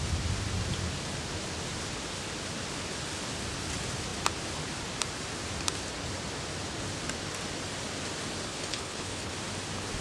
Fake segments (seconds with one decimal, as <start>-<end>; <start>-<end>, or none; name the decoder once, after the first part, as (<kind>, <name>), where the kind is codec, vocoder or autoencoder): 8.5-9.3 (codec, HILCodec)